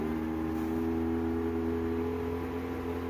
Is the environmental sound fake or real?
real